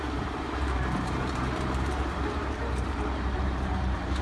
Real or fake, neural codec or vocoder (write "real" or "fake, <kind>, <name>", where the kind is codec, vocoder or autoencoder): fake, vocoder, BigVGAN v2